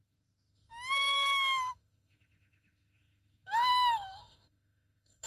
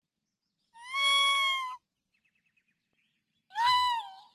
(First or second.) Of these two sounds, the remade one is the first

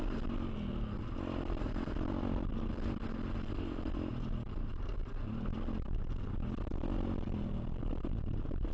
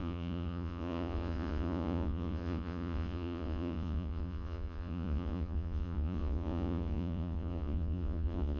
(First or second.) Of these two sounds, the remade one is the second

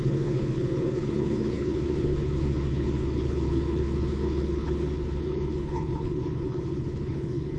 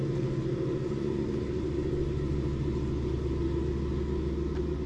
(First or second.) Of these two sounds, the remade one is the first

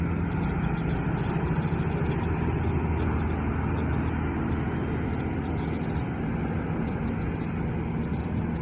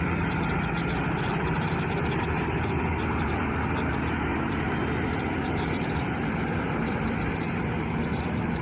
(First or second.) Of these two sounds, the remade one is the second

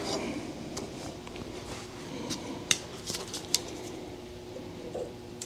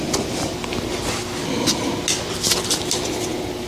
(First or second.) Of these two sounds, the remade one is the first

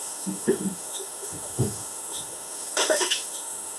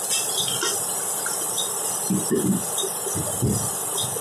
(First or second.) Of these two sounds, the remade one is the first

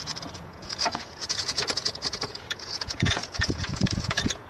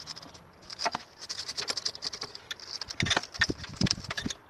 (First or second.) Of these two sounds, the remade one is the first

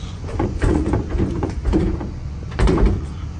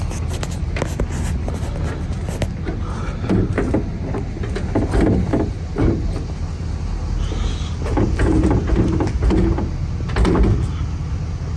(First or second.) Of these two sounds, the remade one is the first